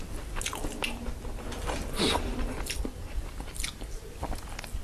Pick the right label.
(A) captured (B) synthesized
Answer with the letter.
A